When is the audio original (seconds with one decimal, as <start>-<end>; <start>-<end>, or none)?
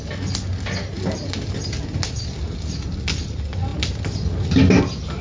0.0-5.2